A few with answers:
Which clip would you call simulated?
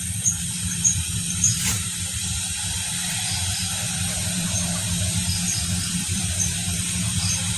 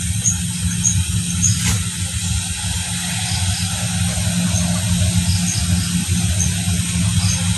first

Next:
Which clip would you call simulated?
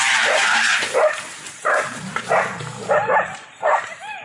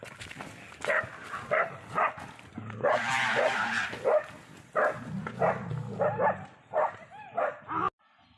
first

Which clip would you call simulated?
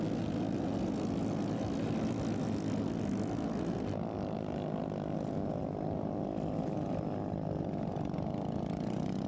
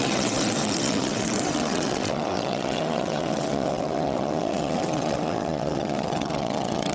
second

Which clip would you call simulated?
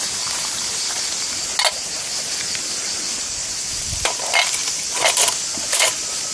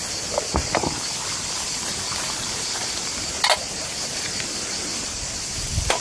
second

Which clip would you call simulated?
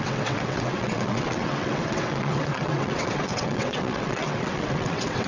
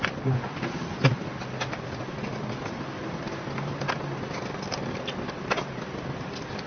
first